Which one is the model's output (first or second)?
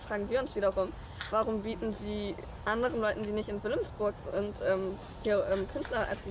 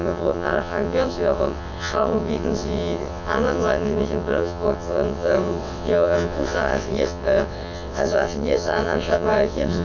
second